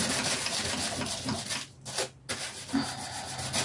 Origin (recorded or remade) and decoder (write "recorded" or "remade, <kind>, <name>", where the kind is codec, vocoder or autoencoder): recorded